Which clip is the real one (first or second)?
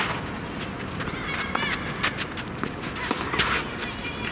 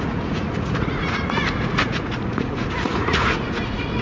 first